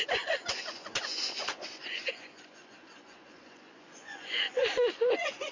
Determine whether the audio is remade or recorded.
remade